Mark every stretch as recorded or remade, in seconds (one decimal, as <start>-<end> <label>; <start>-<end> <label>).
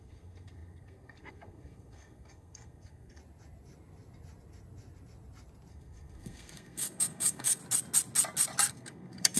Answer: 0.0-3.2 remade; 3.2-5.7 recorded; 5.7-7.6 remade; 7.6-8.7 recorded; 8.7-9.4 remade